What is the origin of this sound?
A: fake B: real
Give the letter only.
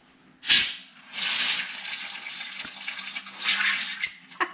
B